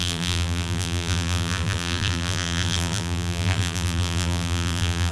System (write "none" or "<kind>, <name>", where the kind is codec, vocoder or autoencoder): vocoder, BigVGAN v2